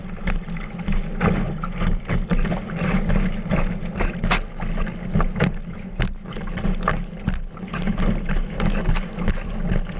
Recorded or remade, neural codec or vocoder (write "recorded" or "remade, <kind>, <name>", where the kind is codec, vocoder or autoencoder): recorded